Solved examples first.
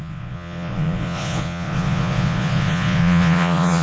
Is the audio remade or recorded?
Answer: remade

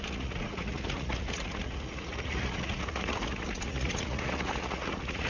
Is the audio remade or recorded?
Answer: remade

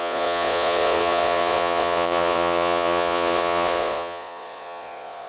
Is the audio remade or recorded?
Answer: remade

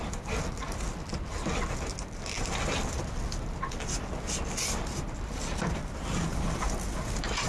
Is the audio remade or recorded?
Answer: recorded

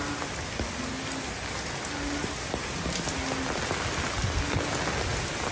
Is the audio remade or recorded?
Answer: recorded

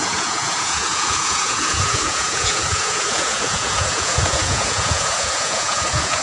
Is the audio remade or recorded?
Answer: remade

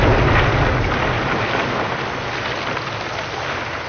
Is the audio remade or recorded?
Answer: recorded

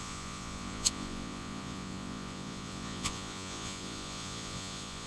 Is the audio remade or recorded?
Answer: remade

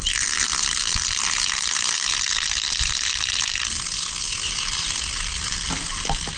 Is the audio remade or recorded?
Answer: recorded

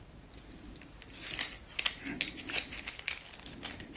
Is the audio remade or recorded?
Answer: recorded